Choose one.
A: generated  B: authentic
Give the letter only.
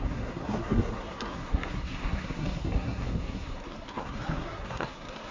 A